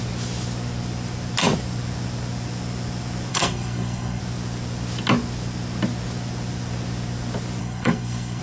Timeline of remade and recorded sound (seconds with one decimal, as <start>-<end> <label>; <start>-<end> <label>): 0.0-3.3 recorded; 3.3-4.2 remade; 4.2-7.6 recorded; 7.6-8.4 remade